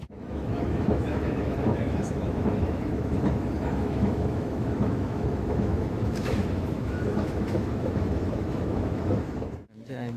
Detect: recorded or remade remade